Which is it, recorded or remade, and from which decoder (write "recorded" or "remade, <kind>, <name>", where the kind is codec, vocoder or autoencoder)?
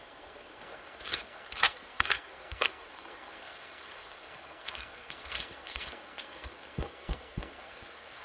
remade, codec, SNAC